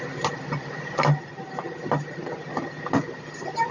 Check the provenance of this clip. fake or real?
real